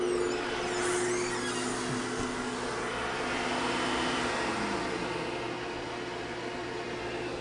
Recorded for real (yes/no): yes